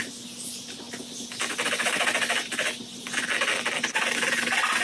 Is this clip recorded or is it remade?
recorded